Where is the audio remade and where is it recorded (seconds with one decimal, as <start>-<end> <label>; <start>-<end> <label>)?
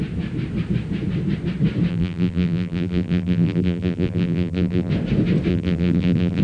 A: 0.0-1.9 recorded; 1.9-4.9 remade; 4.9-5.5 recorded; 5.5-6.4 remade